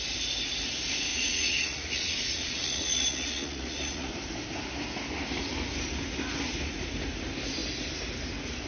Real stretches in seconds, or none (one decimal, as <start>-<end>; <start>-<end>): 0.0-1.1; 4.1-8.7